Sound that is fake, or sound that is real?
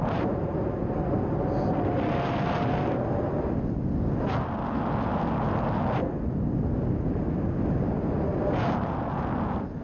real